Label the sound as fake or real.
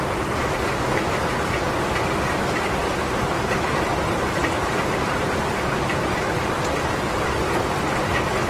real